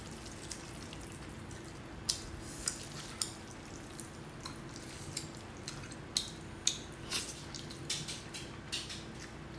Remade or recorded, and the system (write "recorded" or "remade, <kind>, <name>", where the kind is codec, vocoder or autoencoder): recorded